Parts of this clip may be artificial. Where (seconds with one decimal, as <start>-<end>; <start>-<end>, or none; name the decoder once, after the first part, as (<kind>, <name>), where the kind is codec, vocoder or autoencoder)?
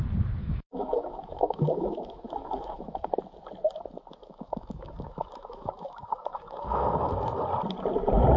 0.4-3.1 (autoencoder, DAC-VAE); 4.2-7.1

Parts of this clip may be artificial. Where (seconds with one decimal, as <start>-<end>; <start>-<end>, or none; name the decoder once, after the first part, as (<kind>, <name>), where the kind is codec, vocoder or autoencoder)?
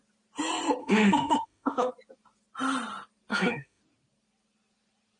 0.8-1.9 (autoencoder, DAC-VAE); 3.3-3.8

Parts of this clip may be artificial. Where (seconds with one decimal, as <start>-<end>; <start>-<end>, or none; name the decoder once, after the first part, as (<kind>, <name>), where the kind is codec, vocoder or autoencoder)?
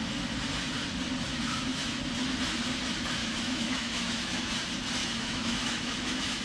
1.3-2.0 (autoencoder, DAC-VAE); 3.2-4.5; 5.0-6.4